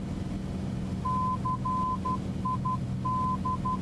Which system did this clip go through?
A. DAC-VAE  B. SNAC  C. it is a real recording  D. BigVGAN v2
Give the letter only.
C